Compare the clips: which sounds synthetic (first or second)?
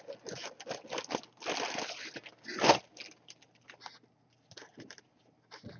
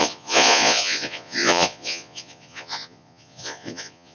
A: second